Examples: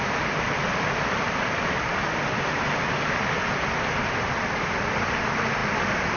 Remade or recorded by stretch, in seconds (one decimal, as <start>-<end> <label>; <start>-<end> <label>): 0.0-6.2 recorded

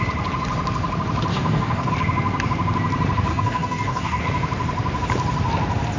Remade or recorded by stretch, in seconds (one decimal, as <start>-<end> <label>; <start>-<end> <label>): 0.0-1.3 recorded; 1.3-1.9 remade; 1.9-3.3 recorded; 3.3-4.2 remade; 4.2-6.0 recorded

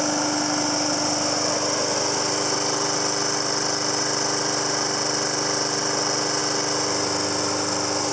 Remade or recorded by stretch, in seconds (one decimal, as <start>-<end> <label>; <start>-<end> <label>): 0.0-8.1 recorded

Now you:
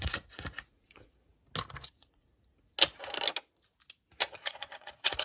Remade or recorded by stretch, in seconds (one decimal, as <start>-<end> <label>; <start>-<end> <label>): 0.0-1.3 remade; 1.3-1.9 recorded; 1.9-2.7 remade; 2.7-4.4 recorded; 4.4-5.2 remade

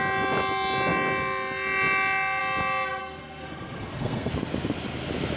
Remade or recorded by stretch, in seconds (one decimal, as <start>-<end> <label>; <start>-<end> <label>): 0.0-3.0 recorded; 3.0-4.3 remade; 4.3-5.4 recorded

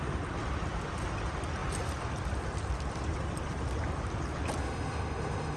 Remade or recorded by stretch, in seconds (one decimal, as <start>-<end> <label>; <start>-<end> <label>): 0.0-4.6 recorded; 4.6-5.6 remade

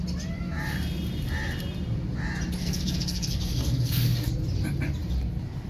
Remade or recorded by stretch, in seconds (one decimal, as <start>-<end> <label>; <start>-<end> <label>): 0.0-2.6 recorded; 2.6-4.3 remade; 4.3-5.7 recorded

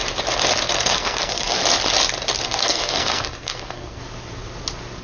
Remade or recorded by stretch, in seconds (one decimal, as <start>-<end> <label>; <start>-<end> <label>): 0.0-0.7 recorded; 0.7-1.6 remade; 1.6-2.4 recorded; 2.4-4.0 remade; 4.0-5.0 recorded